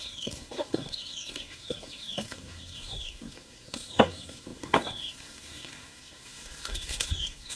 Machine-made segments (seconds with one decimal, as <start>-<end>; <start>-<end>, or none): 0.0-7.6